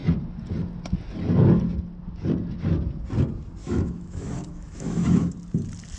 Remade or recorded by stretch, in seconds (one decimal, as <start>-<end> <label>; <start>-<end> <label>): 0.0-3.6 recorded; 3.6-5.3 remade; 5.3-6.0 recorded

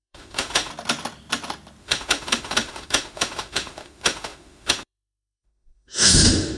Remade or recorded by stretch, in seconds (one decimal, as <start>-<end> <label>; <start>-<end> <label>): 0.0-0.7 remade; 0.7-1.8 recorded; 1.8-6.6 remade

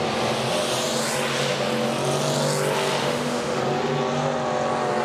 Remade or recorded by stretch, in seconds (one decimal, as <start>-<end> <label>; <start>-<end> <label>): 0.0-3.0 recorded; 3.0-3.6 remade; 3.6-5.0 recorded

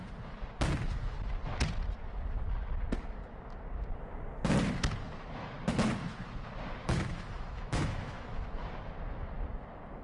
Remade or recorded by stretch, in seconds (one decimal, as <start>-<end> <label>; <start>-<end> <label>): 0.0-6.8 recorded; 6.8-8.4 remade; 8.4-10.0 recorded